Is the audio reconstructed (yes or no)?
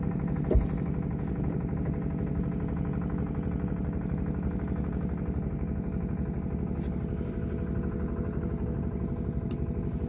no